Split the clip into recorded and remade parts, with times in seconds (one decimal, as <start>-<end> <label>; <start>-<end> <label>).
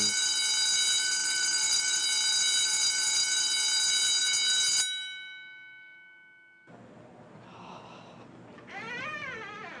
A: 0.0-1.2 recorded; 1.2-2.0 remade; 2.0-9.8 recorded